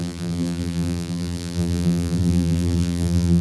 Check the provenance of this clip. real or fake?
fake